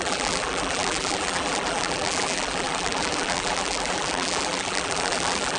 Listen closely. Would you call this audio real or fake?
fake